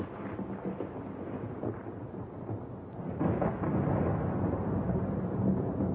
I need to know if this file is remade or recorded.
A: recorded